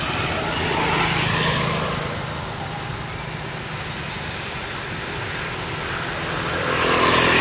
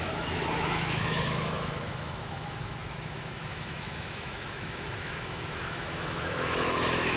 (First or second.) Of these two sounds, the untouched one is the first